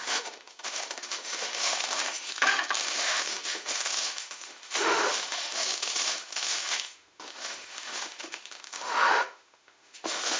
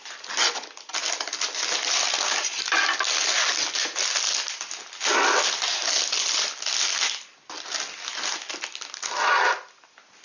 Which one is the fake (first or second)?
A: first